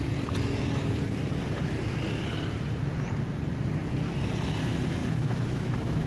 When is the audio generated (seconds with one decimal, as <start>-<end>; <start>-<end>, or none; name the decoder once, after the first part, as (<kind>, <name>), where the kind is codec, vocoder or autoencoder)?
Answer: 5.0-6.1 (autoencoder, DAC-VAE)